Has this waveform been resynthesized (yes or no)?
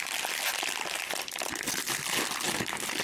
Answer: no